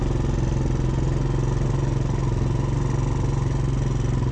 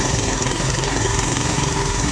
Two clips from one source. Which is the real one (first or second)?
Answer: first